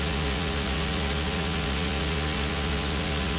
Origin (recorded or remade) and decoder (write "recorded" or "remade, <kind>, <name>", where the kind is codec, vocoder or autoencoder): remade, vocoder, Vocos